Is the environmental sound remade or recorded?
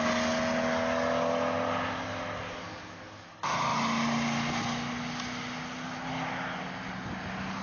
recorded